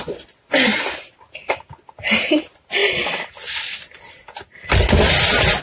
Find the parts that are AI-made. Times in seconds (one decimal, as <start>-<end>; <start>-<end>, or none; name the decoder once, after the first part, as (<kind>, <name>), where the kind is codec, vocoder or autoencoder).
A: none